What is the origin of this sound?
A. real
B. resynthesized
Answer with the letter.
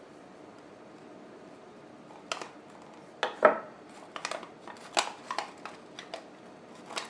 A